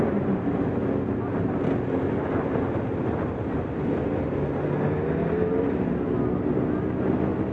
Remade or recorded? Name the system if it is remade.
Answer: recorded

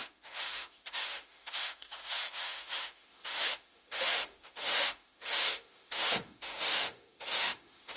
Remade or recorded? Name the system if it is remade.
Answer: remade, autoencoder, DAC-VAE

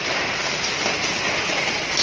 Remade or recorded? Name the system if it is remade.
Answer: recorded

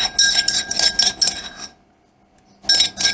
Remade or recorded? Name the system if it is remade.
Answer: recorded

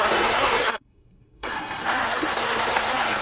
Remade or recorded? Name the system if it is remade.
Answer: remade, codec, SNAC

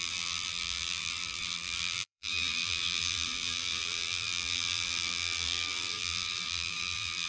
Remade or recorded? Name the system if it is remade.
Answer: remade, vocoder, BigVGAN v2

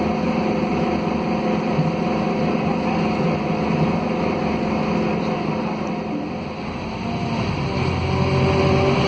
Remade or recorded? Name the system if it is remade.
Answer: recorded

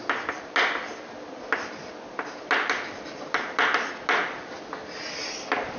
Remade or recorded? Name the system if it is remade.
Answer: recorded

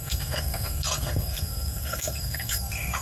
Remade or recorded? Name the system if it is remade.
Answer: remade, codec, SNAC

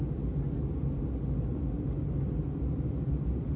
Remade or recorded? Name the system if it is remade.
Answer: recorded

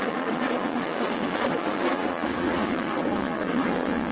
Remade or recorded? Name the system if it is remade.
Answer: remade, vocoder, Vocos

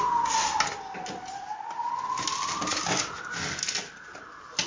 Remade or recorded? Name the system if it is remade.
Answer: recorded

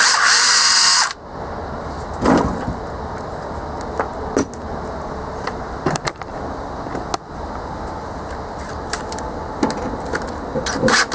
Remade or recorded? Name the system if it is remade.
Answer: recorded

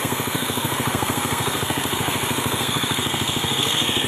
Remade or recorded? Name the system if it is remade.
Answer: remade, codec, SNAC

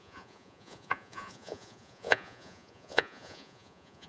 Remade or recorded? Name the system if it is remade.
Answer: remade, vocoder, Vocos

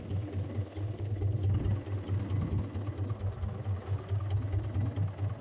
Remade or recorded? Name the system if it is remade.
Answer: recorded